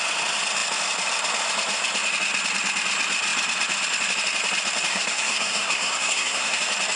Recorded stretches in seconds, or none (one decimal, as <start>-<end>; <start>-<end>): 0.0-4.9; 6.6-7.0